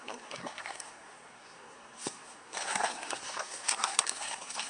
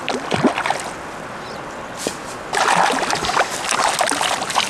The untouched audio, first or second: second